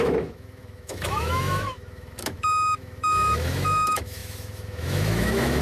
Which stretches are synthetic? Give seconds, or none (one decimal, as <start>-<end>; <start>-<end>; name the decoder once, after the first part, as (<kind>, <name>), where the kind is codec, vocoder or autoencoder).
0.0-5.6 (autoencoder, DAC-VAE)